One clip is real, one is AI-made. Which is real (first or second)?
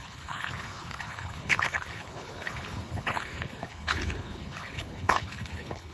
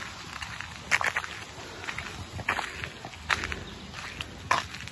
second